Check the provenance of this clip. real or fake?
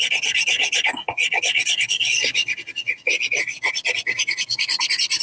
real